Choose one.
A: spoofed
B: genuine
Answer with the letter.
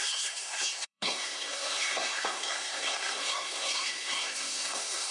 A